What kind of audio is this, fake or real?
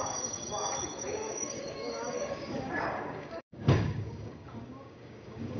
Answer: fake